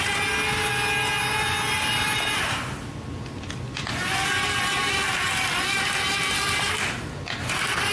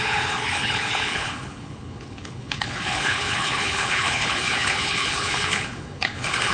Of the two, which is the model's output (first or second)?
second